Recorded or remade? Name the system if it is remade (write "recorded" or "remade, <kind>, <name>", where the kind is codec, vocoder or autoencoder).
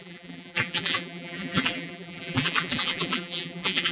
remade, vocoder, BigVGAN v2